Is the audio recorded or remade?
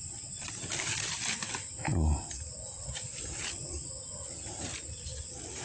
recorded